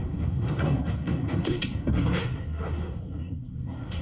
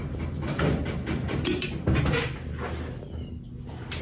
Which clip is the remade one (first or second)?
first